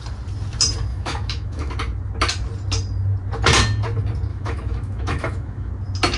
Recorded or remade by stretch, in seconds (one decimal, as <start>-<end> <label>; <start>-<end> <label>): 0.0-0.9 recorded; 0.9-1.7 remade; 1.7-4.3 recorded; 4.3-5.7 remade; 5.7-6.2 recorded

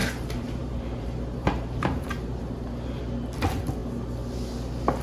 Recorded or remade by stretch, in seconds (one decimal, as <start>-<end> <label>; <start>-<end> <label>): 0.0-3.0 remade; 3.0-5.0 recorded

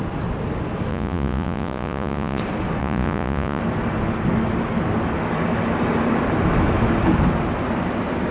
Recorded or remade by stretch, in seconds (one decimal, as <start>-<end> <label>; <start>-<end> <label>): 0.0-0.9 recorded; 0.9-2.4 remade; 2.4-2.8 recorded; 2.8-3.6 remade; 3.6-8.3 recorded

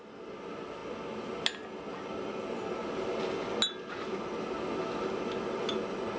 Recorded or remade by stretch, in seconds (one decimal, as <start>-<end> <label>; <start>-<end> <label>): 0.0-6.2 recorded